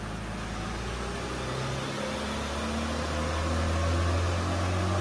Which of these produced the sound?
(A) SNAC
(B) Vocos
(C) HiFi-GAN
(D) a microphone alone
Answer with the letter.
D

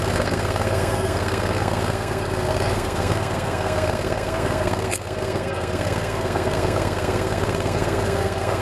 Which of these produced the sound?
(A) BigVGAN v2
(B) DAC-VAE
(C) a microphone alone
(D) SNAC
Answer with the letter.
D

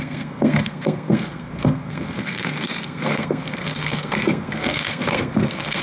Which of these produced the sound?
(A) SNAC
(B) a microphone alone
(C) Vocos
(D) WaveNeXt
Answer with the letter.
A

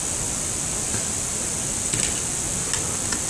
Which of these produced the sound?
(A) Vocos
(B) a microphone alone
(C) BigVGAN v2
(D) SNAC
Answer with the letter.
B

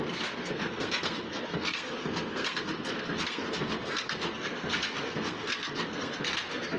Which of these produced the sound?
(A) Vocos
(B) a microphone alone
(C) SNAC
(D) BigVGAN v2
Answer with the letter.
C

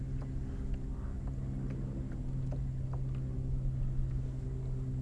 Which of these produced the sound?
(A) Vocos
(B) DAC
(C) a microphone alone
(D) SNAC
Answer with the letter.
C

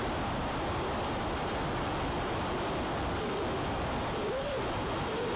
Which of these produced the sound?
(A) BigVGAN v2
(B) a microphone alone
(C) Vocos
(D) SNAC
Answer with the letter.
B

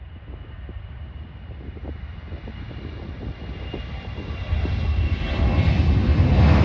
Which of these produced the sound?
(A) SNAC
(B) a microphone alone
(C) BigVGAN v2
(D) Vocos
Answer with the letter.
B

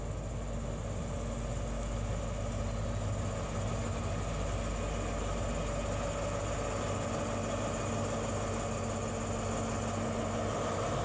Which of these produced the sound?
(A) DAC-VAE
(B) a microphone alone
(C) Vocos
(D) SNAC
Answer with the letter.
B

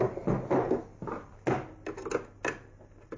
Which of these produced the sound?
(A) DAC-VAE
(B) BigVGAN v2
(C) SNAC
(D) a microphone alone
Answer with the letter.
D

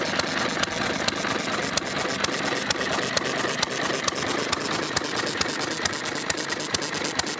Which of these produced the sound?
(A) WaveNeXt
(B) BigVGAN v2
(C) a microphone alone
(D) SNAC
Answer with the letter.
C